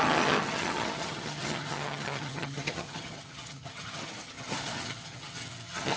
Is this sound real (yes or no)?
no